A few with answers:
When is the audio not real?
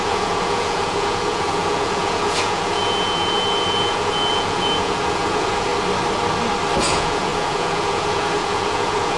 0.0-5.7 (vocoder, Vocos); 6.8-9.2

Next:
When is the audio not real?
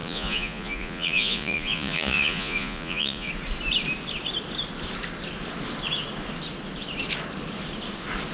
0.0-3.3 (vocoder, Vocos)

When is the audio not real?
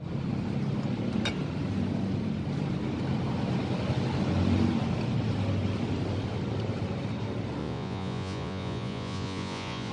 7.6-9.9 (vocoder, Vocos)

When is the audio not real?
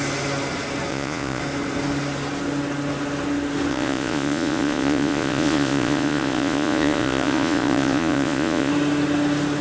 0.9-1.4 (vocoder, Vocos); 3.7-8.7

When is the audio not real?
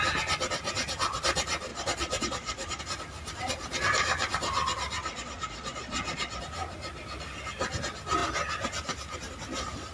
1.7-2.8 (vocoder, Vocos); 5.0-6.4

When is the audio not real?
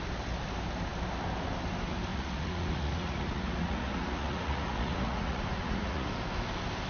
2.1-6.1 (vocoder, Vocos)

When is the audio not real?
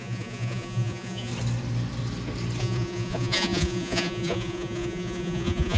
0.0-1.3 (vocoder, Vocos); 2.6-5.8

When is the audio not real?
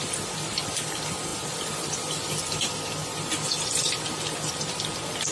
none